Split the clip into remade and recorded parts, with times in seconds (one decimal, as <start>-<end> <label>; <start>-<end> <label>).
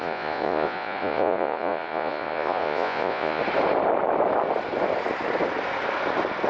0.0-3.4 remade; 3.4-6.5 recorded